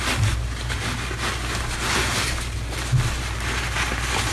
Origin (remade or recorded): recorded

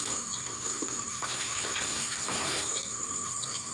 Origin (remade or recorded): remade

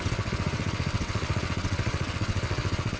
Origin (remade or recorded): remade